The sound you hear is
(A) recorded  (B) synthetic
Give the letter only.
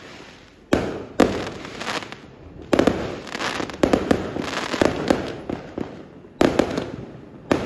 A